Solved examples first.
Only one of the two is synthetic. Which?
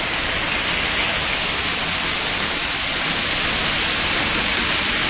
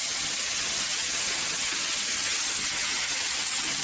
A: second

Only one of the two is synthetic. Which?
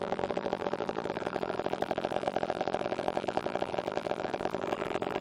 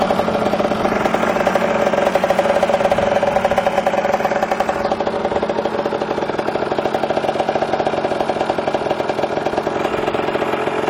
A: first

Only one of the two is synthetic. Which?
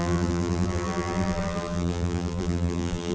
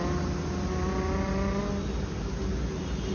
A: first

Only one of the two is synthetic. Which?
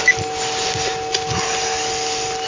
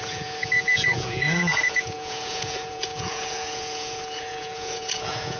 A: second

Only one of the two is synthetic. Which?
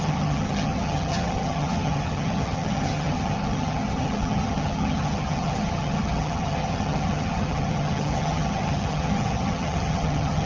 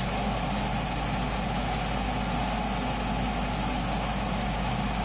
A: first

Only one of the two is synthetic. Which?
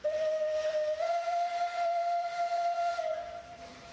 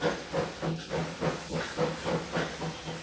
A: first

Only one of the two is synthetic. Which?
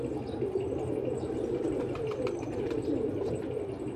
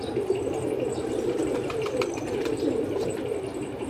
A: second